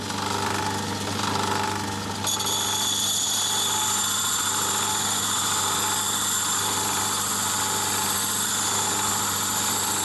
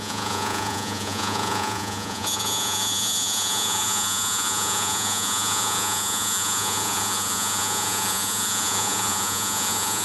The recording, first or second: first